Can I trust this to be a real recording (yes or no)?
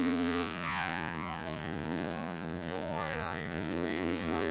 no